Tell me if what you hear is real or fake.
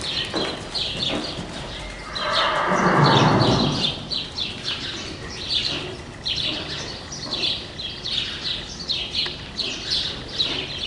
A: fake